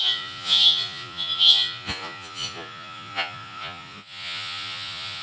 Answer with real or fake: fake